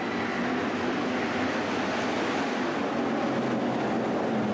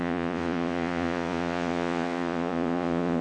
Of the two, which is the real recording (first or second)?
first